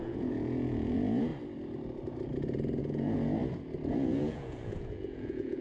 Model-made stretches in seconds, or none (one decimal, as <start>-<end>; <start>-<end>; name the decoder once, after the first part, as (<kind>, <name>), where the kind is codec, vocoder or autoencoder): 0.0-1.3 (vocoder, Vocos); 2.8-3.4; 3.9-5.6